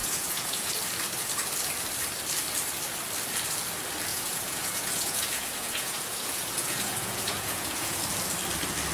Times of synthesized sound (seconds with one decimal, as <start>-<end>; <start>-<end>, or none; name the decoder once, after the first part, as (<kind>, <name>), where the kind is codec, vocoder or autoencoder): 0.0-0.7 (vocoder, Vocos); 4.1-8.0